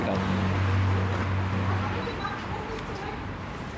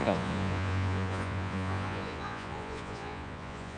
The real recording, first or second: first